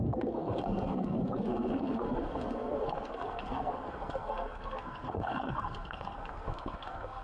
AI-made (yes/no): yes